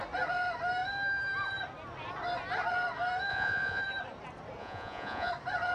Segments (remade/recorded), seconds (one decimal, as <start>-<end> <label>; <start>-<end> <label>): 0.0-3.3 recorded; 3.3-3.8 remade; 3.8-4.6 recorded; 4.6-5.3 remade; 5.3-5.7 recorded